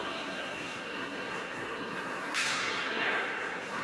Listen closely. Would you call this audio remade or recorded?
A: remade